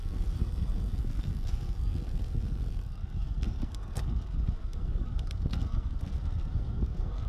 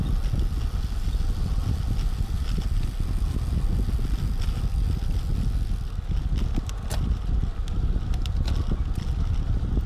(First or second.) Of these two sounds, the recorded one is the second